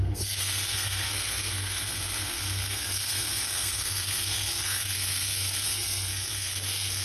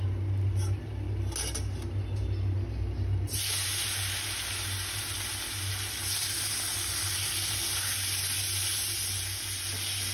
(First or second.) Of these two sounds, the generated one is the first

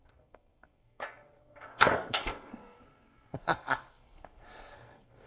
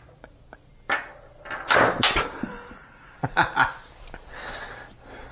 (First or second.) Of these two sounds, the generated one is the first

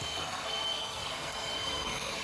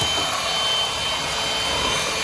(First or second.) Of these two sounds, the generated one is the first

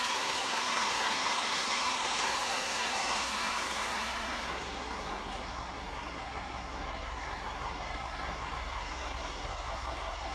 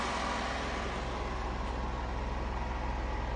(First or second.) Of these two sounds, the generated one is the first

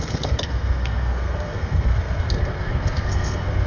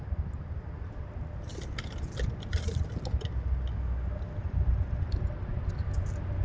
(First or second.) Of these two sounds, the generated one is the first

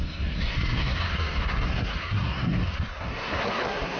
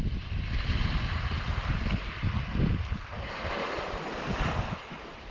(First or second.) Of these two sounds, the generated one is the first